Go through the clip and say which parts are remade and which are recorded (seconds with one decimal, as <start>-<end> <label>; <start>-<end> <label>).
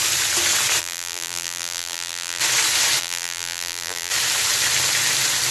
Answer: 0.0-0.8 recorded; 0.8-2.4 remade; 2.4-3.0 recorded; 3.0-4.1 remade; 4.1-5.5 recorded